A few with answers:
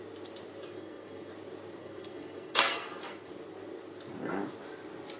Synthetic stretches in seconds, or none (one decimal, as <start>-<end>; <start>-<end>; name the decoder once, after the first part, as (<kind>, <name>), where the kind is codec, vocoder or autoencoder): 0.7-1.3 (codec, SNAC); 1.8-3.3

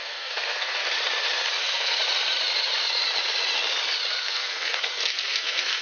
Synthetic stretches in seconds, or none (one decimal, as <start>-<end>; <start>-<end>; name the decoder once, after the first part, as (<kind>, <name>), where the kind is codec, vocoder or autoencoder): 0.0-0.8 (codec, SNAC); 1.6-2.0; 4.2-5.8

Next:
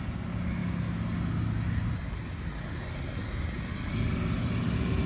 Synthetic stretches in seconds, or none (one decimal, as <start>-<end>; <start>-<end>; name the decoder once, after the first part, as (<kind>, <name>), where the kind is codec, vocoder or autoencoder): none

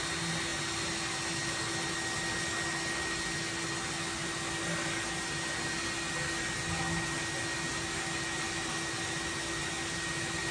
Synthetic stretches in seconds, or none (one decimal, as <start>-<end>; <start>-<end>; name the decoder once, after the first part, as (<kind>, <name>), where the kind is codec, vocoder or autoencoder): none

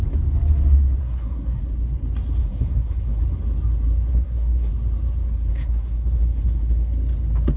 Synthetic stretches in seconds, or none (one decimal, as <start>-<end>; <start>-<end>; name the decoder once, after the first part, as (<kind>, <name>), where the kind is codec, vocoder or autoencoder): 1.0-1.6 (codec, SNAC); 2.4-3.2; 4.1-4.7; 5.5-6.9